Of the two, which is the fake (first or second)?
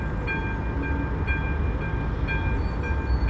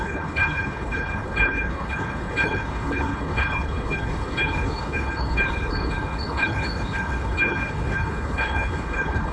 second